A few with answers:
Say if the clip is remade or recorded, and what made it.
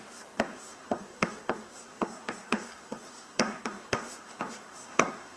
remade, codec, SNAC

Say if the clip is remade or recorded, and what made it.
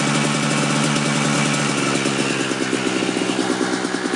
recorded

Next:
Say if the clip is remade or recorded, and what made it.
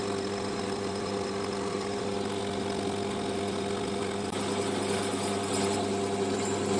recorded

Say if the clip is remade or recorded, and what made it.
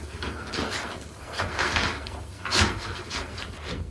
remade, codec, SNAC